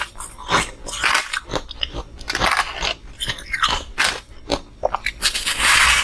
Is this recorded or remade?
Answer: recorded